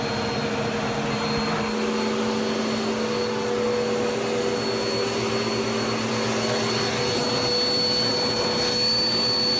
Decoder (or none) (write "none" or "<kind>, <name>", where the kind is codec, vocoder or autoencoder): none